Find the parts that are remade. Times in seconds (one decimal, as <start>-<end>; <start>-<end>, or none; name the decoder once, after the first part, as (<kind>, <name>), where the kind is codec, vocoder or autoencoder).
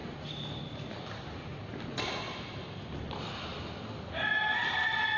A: 0.6-1.5 (vocoder, BigVGAN v2); 4.6-5.2